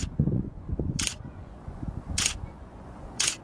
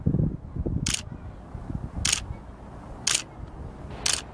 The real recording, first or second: second